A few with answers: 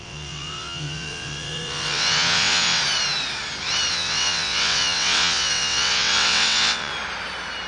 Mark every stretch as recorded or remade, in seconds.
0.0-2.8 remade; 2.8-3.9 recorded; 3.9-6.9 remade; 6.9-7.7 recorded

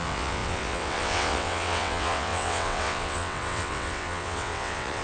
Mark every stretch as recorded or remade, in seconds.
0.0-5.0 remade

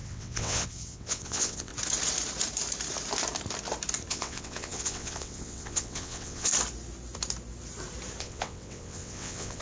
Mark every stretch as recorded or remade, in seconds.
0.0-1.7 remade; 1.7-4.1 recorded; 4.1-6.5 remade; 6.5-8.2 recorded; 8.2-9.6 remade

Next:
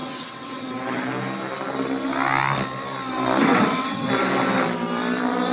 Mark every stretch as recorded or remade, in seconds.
0.0-0.7 remade; 0.7-3.5 recorded; 3.5-4.1 remade; 4.1-5.5 recorded

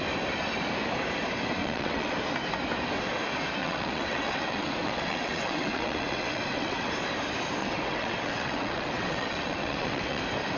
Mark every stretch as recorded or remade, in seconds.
0.0-1.6 recorded; 1.6-2.1 remade; 2.1-3.6 recorded; 3.6-6.9 remade; 6.9-7.6 recorded; 7.6-10.2 remade; 10.2-10.6 recorded